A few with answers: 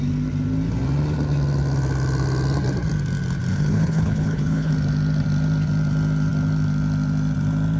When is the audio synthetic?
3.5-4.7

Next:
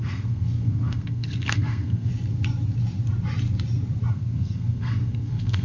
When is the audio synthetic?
0.0-2.1; 4.1-5.6